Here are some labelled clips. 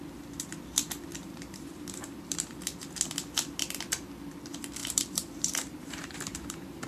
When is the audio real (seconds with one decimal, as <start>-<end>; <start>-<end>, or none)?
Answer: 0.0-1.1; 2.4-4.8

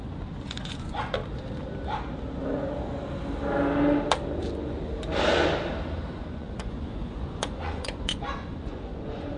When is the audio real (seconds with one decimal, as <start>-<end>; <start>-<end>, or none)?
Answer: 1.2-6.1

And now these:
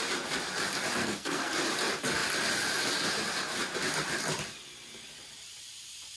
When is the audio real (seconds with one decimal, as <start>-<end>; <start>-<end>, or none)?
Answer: 0.0-1.0; 1.5-6.2

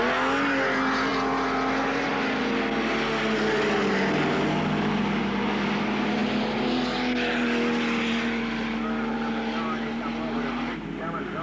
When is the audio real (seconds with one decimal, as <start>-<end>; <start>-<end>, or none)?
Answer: 0.0-11.4

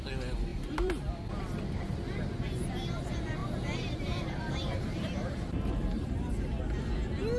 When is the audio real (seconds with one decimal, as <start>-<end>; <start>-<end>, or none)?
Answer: 0.0-0.5; 1.1-3.4; 6.3-7.4

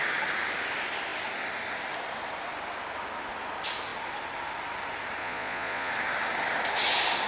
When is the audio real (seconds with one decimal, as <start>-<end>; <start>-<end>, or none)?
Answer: 0.0-5.2; 5.9-7.3

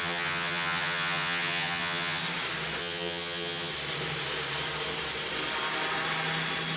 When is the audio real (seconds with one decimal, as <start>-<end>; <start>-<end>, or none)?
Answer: 2.2-2.8; 3.7-6.8